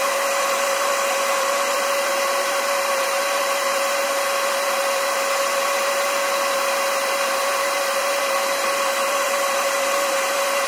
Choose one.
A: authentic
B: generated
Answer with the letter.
B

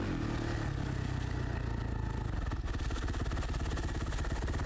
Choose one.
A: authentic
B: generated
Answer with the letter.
A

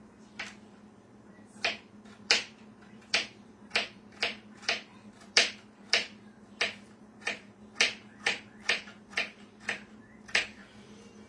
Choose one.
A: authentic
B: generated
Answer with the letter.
B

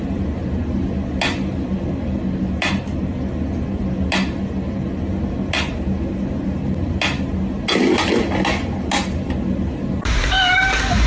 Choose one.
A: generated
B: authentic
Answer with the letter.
B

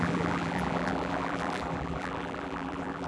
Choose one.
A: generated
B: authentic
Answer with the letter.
A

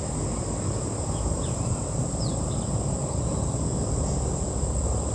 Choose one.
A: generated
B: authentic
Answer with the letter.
B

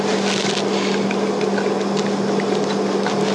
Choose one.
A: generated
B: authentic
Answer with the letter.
B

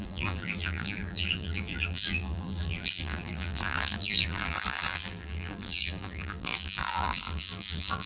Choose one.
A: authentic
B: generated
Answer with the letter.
B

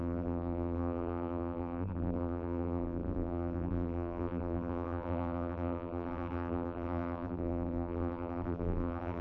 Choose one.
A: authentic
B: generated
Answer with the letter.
B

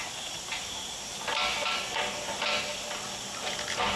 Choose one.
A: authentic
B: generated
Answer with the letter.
A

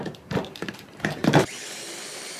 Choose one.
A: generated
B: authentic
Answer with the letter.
A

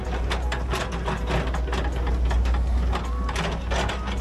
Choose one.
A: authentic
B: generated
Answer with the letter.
A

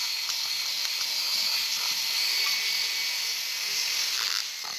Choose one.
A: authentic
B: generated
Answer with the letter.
B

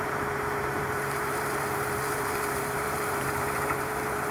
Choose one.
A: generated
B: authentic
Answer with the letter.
A